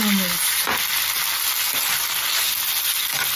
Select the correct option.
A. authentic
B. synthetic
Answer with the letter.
A